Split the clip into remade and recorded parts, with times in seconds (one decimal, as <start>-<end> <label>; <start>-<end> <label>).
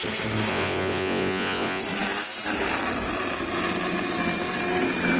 0.0-0.5 recorded; 0.5-1.8 remade; 1.8-5.2 recorded